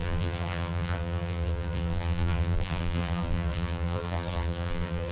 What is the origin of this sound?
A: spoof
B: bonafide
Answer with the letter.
A